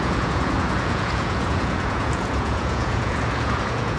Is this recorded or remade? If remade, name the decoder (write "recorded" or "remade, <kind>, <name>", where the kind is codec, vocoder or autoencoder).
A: remade, vocoder, Vocos